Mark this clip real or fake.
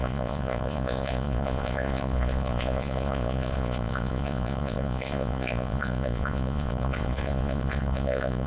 fake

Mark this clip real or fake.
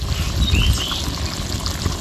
real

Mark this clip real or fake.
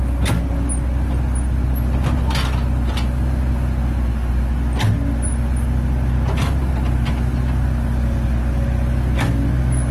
real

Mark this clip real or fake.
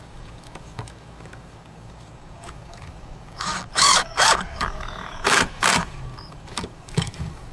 fake